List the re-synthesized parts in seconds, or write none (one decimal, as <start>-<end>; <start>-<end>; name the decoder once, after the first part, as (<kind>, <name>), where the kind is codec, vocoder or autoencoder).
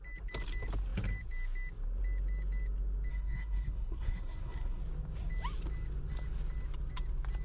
3.1-4.8 (codec, SNAC)